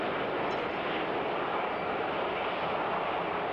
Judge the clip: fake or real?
real